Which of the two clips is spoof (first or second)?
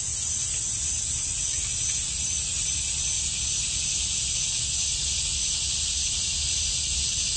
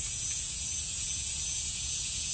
second